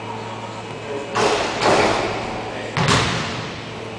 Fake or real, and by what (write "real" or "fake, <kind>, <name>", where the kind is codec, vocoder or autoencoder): real